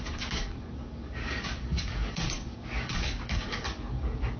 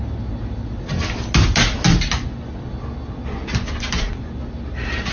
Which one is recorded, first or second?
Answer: second